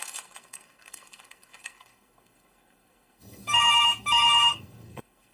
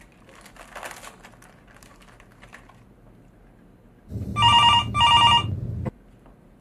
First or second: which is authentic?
second